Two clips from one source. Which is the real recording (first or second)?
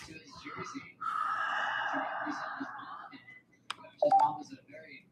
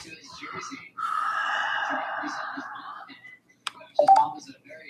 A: first